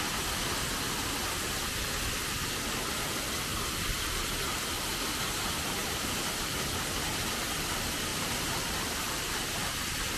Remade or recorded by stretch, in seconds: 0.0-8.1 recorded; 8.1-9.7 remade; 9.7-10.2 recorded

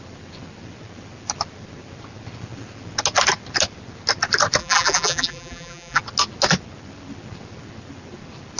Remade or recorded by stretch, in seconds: 0.0-4.6 recorded; 4.6-6.0 remade; 6.0-8.6 recorded

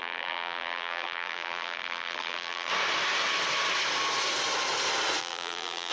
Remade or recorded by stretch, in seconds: 0.0-2.7 remade; 2.7-5.2 recorded; 5.2-5.9 remade

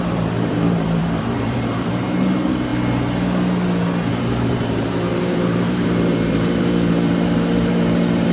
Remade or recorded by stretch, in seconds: 0.0-2.7 remade; 2.7-4.1 recorded; 4.1-8.3 remade

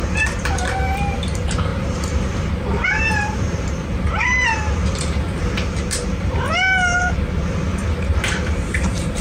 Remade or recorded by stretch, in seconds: 0.0-1.7 recorded; 1.7-6.4 remade; 6.4-7.7 recorded; 7.7-9.2 remade

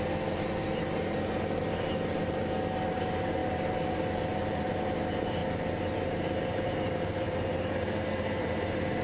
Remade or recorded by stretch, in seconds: 0.0-2.4 remade; 2.4-2.9 recorded; 2.9-5.4 remade; 5.4-6.1 recorded; 6.1-9.0 remade

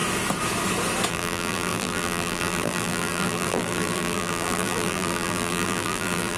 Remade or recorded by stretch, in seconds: 0.0-1.1 recorded; 1.1-6.4 remade

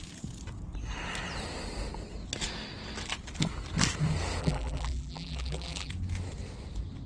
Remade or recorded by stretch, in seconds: 0.0-4.4 recorded; 4.4-5.9 remade; 5.9-7.1 recorded